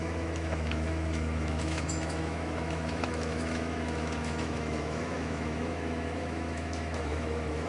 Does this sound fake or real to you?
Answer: fake